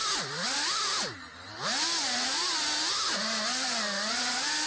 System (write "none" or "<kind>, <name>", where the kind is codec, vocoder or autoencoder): none